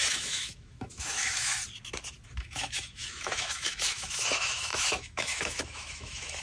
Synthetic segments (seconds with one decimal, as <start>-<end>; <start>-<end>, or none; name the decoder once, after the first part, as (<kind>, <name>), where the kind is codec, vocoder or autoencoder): 0.0-1.5 (autoencoder, DAC-VAE); 2.4-6.4